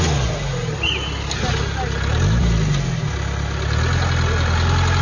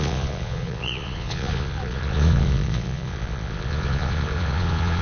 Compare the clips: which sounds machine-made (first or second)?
second